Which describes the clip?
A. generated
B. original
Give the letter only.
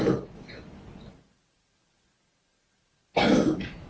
B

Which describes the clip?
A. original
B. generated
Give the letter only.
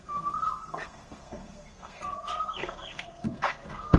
B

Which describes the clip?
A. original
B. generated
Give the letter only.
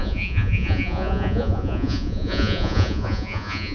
B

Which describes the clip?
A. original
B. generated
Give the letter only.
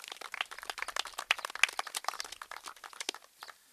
A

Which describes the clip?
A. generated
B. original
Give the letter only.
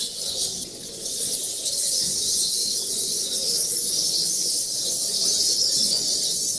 A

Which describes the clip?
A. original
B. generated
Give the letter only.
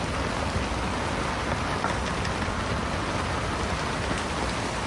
A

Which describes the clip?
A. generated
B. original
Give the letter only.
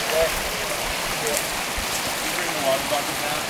B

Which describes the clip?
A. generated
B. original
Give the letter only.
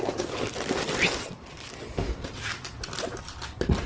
B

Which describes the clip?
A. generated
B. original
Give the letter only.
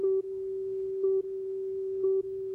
A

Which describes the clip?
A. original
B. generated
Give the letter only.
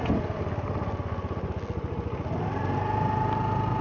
A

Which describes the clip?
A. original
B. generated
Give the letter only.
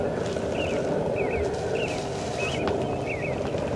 A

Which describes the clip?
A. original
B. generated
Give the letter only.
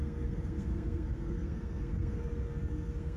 B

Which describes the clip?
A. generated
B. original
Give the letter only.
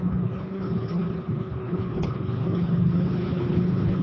A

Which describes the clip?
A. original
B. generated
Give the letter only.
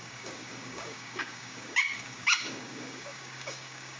B